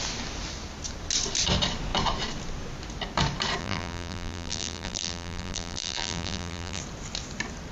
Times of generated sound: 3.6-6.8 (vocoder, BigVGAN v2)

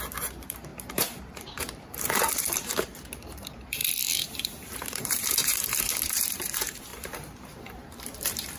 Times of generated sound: 0.0-3.8 (vocoder, BigVGAN v2); 4.3-8.6

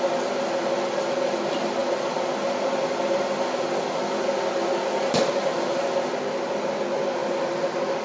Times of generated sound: none

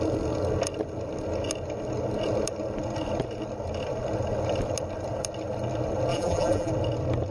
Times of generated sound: 6.1-6.7 (vocoder, BigVGAN v2)

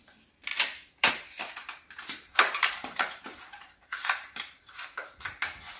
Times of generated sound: 0.5-1.1 (vocoder, BigVGAN v2); 1.6-5.1

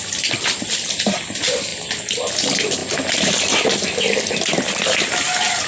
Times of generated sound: none

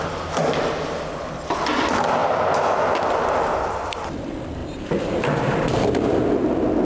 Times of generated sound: 4.6-5.7 (vocoder, BigVGAN v2)

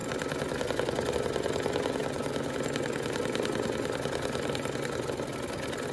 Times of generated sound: none